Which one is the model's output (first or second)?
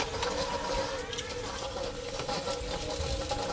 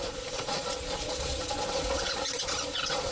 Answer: second